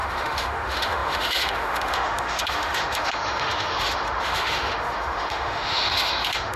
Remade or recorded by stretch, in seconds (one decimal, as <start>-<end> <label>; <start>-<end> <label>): 0.0-6.6 remade